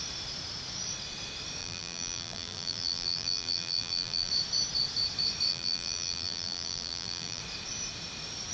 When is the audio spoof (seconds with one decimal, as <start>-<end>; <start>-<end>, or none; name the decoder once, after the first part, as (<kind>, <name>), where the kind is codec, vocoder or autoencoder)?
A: 1.6-4.3 (vocoder, BigVGAN v2); 5.5-7.4